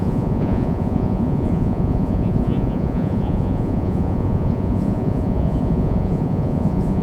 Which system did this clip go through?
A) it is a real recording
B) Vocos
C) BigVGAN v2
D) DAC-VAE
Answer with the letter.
B